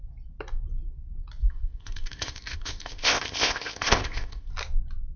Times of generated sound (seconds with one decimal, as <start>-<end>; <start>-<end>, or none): 1.4-4.5